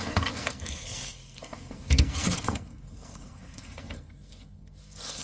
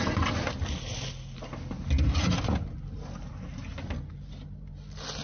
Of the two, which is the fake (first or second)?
first